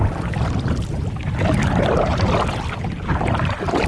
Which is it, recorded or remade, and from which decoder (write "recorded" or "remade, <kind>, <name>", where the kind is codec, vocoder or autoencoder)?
recorded